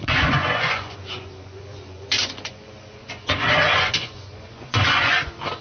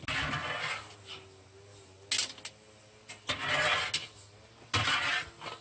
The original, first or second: second